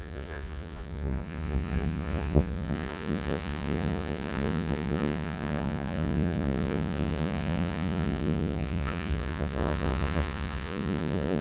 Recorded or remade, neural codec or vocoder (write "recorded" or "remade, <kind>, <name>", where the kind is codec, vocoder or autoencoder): remade, vocoder, Vocos